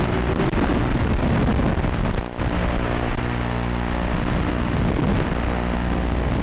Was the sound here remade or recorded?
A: recorded